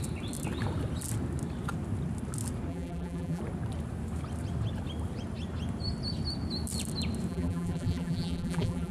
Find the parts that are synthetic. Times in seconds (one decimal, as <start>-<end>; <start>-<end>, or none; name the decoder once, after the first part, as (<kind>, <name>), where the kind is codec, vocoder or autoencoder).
2.7-3.4 (vocoder, BigVGAN v2); 7.3-8.9